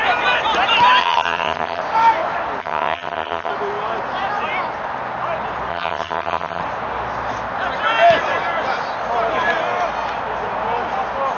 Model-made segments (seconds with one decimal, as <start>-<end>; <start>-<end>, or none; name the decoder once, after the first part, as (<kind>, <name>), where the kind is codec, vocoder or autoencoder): 1.0-1.8 (vocoder, HiFi-GAN); 2.6-3.5; 5.7-6.6